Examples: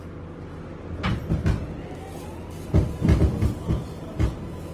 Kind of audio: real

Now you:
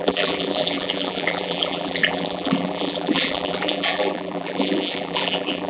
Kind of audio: fake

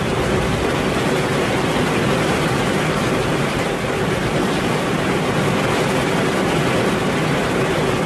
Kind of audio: real